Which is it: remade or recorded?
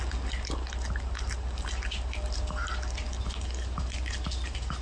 recorded